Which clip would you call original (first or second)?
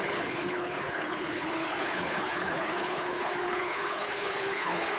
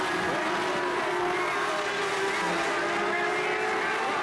second